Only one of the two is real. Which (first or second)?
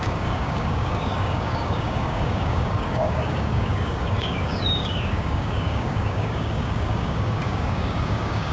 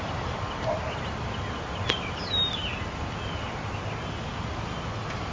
second